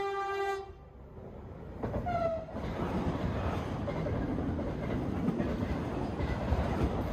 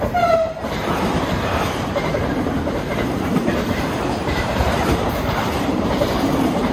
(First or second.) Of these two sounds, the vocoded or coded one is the second